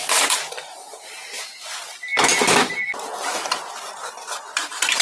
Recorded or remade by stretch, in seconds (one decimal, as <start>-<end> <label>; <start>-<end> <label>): 0.0-5.0 recorded